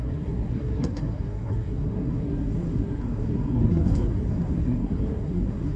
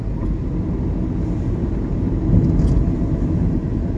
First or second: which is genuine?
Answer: second